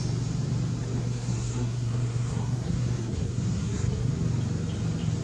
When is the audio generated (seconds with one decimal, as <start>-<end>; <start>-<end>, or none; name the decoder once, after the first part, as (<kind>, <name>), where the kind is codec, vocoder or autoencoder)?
1.0-4.1 (codec, SNAC)